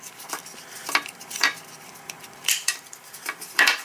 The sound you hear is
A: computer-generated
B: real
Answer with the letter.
A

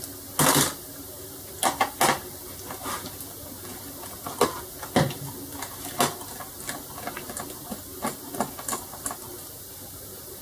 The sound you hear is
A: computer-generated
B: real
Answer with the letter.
B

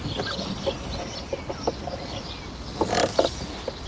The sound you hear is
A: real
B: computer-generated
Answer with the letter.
A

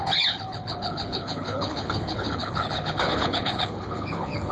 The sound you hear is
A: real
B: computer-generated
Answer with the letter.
B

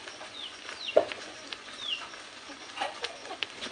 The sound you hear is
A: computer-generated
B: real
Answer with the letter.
A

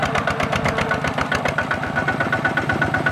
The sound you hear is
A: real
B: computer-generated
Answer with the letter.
A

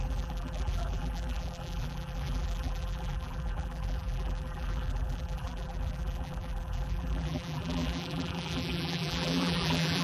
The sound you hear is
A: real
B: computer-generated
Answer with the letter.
B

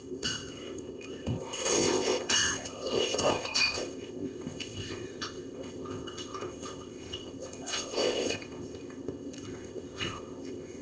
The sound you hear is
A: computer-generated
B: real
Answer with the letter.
A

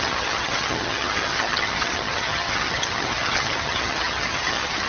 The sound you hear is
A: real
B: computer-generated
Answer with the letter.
B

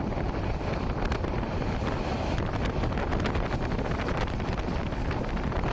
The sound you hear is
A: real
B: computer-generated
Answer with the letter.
A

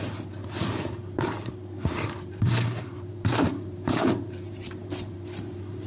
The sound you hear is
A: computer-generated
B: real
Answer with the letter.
A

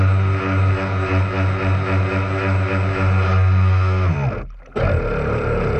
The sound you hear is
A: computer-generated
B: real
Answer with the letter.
B